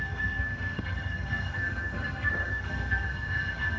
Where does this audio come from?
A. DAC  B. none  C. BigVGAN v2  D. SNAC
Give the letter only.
D